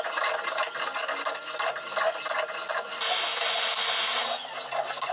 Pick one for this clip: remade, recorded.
recorded